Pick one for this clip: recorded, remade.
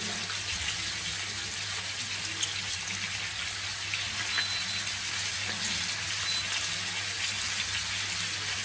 recorded